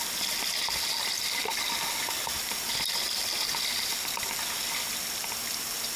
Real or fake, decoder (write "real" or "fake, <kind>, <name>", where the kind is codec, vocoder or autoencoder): real